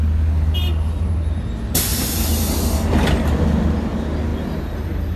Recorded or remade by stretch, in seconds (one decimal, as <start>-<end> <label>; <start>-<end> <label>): 0.0-5.2 recorded